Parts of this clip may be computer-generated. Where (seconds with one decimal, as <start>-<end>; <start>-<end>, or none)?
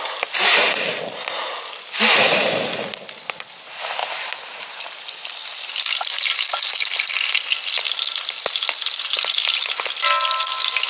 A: 4.0-4.8